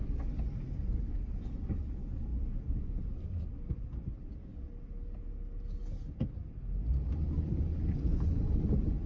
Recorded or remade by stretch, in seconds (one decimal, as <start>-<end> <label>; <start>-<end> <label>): 0.0-9.1 recorded